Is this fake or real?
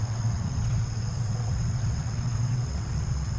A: fake